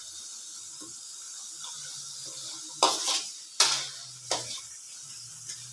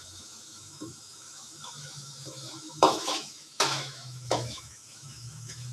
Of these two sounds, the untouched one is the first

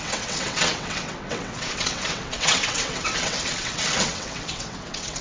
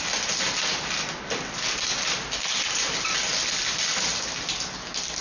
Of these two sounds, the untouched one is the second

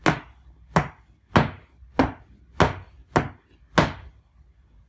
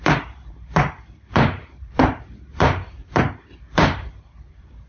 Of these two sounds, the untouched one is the first